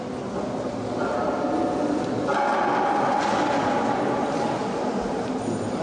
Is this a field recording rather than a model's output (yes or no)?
yes